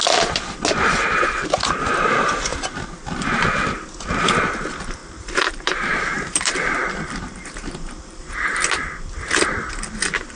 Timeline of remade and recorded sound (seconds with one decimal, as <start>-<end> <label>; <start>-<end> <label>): 0.0-5.0 recorded; 5.0-8.2 remade; 8.2-10.4 recorded